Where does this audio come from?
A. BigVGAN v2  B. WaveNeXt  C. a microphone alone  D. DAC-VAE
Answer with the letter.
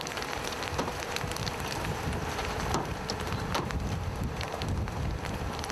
A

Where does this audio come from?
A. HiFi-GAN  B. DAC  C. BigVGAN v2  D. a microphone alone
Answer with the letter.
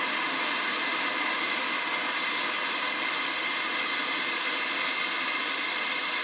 D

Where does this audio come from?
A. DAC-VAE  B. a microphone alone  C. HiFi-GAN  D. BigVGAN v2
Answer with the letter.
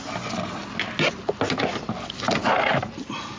B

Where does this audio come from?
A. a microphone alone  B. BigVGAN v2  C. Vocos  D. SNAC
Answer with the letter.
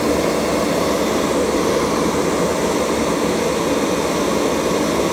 A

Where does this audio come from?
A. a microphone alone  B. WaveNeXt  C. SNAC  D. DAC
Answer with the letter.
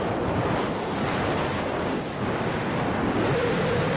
A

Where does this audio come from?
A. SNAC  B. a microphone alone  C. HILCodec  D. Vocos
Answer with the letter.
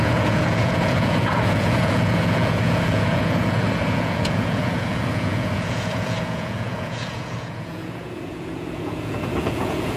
D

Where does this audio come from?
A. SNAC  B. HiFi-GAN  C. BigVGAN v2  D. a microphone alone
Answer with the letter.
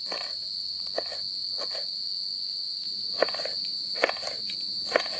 D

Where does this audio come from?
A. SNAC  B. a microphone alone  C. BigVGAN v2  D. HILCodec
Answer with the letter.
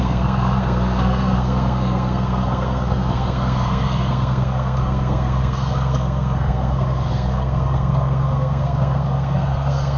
A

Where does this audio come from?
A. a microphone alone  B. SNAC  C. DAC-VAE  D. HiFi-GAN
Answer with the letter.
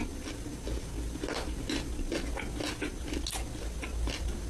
A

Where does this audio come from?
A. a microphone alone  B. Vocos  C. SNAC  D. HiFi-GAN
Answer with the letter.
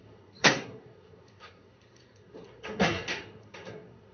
C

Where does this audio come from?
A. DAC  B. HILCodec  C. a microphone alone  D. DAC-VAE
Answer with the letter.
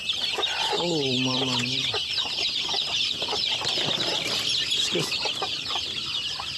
C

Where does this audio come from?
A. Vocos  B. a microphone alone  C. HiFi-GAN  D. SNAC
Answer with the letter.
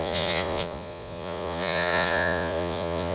A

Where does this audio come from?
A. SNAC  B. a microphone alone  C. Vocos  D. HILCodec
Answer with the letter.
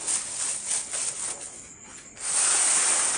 B